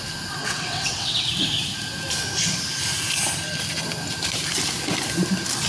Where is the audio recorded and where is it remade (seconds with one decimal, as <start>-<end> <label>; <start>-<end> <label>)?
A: 0.0-0.4 recorded; 0.4-1.3 remade; 1.3-5.7 recorded